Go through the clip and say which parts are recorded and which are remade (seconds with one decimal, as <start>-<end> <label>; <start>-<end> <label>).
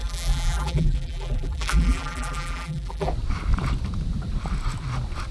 0.0-3.1 remade; 3.1-5.3 recorded